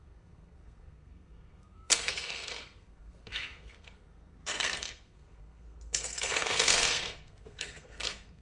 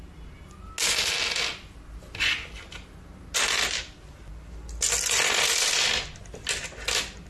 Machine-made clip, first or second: first